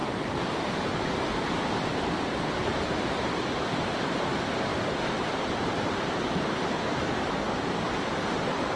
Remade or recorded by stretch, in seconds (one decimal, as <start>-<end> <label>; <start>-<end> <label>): 0.0-1.9 remade; 1.9-2.6 recorded; 2.6-4.3 remade; 4.3-4.7 recorded; 4.7-6.8 remade; 6.8-8.8 recorded